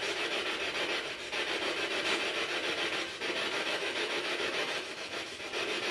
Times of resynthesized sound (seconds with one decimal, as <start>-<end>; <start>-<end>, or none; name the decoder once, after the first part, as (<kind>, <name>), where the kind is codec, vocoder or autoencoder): 3.4-5.4 (autoencoder, DAC-VAE)